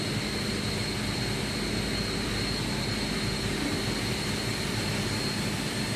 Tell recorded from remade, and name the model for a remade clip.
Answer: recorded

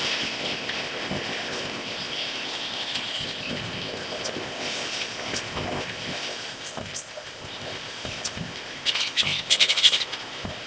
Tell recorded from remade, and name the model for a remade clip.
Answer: remade, codec, ZipCodec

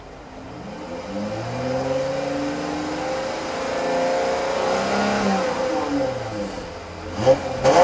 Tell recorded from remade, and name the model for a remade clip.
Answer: recorded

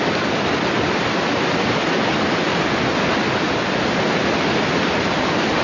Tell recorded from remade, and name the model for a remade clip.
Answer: recorded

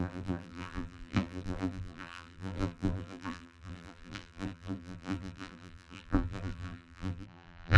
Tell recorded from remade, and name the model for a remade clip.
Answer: remade, vocoder, BigVGAN v2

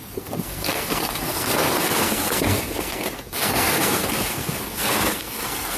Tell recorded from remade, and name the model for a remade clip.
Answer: remade, codec, SNAC